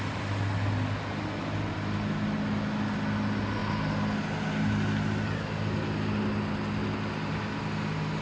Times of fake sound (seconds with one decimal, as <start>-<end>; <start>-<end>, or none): none